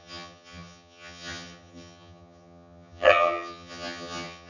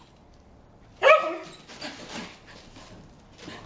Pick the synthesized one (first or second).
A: first